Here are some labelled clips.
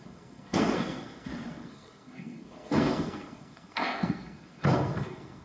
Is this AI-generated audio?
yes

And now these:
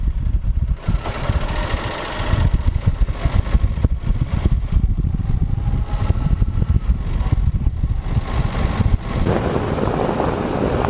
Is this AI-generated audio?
no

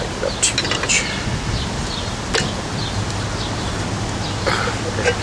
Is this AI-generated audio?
no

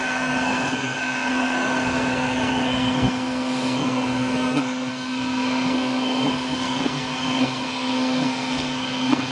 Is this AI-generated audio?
yes